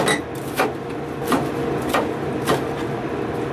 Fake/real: real